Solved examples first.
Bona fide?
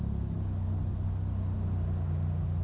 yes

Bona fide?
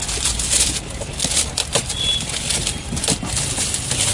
yes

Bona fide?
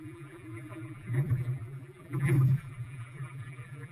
no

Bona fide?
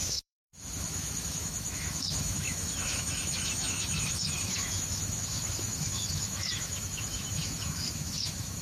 no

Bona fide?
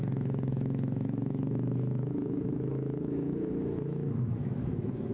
no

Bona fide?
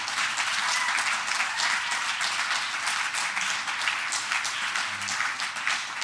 yes